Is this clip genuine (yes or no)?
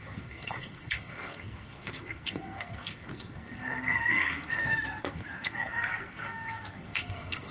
no